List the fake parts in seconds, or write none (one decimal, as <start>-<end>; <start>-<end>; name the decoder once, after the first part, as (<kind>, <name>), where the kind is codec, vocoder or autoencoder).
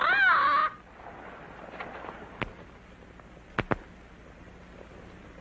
none